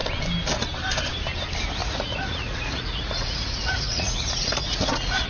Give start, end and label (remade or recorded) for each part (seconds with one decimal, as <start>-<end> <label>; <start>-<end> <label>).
0.0-1.8 recorded; 1.8-5.3 remade